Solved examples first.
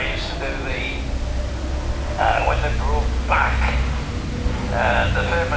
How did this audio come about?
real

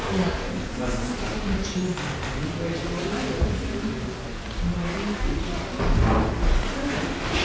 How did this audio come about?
real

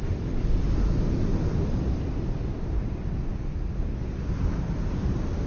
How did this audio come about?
real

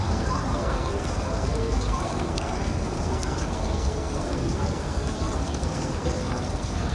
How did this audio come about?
fake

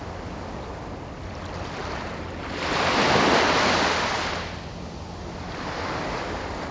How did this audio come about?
real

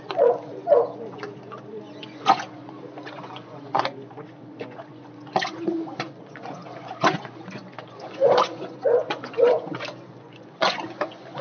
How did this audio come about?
fake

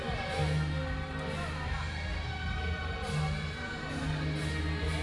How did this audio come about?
real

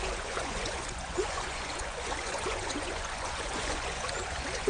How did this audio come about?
fake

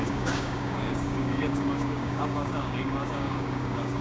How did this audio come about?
fake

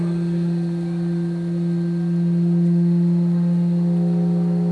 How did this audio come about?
real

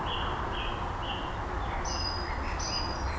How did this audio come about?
real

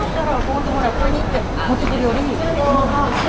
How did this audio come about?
real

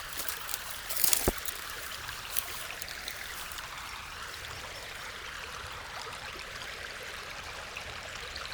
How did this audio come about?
fake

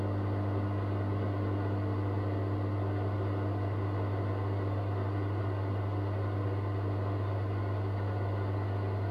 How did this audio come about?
real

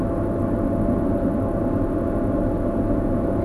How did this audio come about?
real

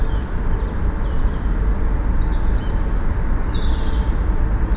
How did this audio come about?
real